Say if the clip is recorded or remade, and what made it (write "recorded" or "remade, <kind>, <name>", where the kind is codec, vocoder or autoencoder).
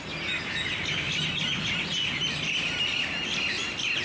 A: recorded